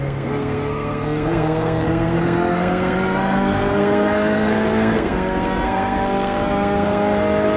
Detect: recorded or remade remade